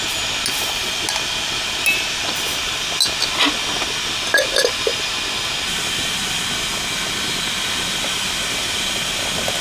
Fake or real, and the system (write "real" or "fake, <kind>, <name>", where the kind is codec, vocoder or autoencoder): real